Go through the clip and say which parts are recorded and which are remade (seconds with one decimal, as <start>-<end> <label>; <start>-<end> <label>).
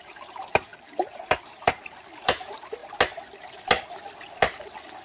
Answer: 0.0-2.8 remade; 2.8-5.0 recorded